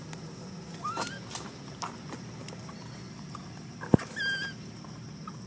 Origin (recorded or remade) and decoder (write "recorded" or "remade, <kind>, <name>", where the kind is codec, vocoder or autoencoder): recorded